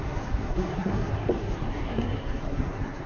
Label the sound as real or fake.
fake